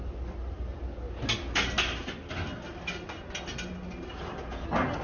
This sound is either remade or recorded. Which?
recorded